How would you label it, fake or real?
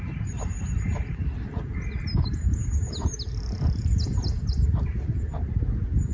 real